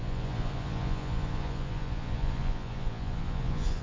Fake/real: fake